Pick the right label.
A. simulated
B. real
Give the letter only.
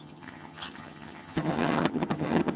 A